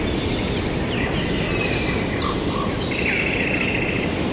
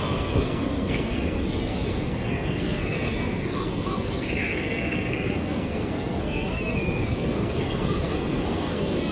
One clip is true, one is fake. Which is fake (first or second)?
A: second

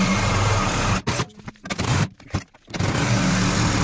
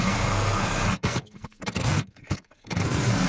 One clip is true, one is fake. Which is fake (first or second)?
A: second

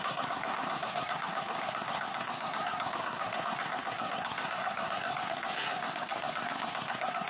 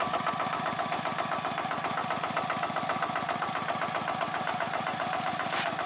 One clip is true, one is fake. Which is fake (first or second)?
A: first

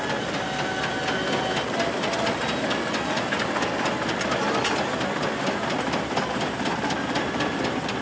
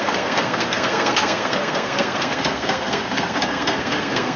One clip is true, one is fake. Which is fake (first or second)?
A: second